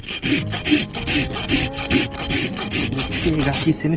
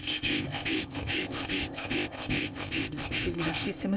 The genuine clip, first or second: first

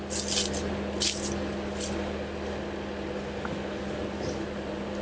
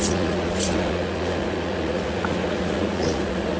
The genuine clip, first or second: first